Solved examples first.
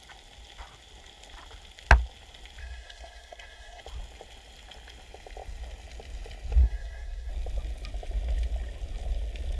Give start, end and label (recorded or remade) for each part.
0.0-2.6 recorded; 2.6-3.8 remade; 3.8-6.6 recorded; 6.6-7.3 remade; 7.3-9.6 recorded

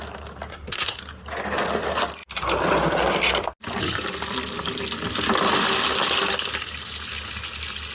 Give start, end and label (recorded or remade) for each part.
0.0-0.5 recorded; 0.5-1.0 remade; 1.0-7.9 recorded

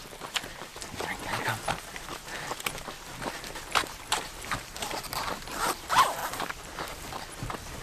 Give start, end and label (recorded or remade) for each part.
0.0-0.7 remade; 0.7-3.9 recorded; 3.9-6.2 remade; 6.2-7.1 recorded; 7.1-7.8 remade

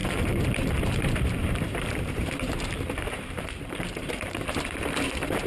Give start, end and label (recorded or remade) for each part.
0.0-5.5 remade

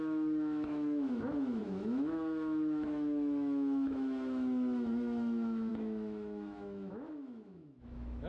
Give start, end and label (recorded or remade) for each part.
0.0-8.3 remade

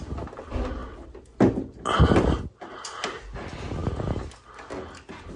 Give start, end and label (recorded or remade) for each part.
0.0-5.4 recorded